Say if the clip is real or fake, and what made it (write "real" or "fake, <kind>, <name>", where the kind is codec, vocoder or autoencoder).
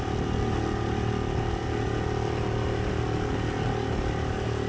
real